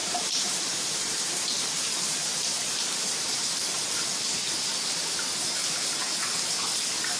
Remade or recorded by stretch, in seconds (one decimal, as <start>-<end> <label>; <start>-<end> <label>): 0.0-3.5 remade; 3.5-7.2 recorded